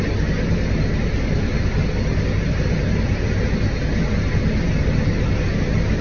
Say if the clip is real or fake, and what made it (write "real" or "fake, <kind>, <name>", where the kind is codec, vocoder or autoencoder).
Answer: real